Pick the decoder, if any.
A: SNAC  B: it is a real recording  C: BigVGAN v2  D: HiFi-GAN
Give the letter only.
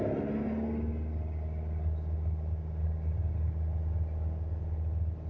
B